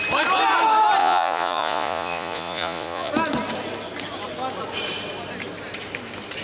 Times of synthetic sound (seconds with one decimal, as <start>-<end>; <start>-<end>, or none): 1.0-3.1